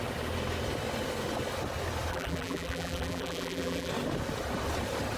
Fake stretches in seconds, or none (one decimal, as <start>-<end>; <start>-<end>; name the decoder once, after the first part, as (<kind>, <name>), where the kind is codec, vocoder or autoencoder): 2.1-3.9 (vocoder, BigVGAN v2)

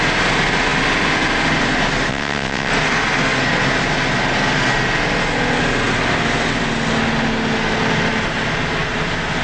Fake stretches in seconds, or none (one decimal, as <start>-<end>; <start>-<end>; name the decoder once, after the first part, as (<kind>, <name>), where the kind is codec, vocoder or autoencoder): 2.1-2.7 (vocoder, WaveNeXt)

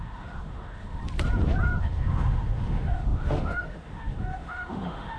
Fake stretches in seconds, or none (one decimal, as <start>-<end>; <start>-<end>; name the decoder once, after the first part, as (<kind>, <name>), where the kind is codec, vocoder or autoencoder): 0.0-1.0 (autoencoder, DAC-VAE); 1.8-5.2

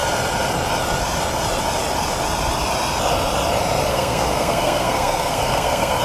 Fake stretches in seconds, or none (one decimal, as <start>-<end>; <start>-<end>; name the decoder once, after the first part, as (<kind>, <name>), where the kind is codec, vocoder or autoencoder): 3.9-6.0 (codec, SNAC)

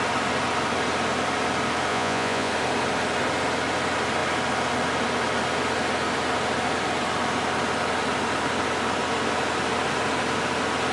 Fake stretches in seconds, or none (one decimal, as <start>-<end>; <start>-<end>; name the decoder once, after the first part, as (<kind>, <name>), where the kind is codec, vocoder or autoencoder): 1.9-2.5 (vocoder, Vocos)

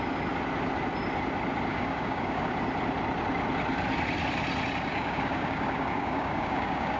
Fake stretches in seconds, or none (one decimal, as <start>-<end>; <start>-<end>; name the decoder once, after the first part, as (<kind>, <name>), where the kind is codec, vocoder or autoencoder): 1.7-2.5 (codec, DAC); 4.9-7.0

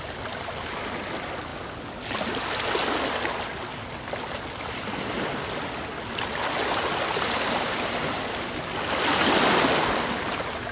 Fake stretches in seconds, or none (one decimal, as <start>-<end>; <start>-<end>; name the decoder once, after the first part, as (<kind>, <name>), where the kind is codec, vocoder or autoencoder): none